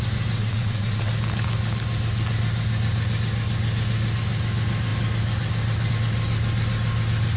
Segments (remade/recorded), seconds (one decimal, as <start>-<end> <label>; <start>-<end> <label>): 0.0-0.4 recorded; 0.4-1.1 remade; 1.1-7.4 recorded